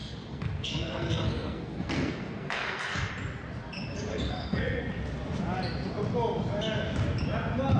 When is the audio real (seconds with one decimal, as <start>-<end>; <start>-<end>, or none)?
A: 3.1-4.1; 4.8-7.8